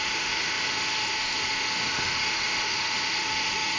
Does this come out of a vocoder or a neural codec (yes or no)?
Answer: yes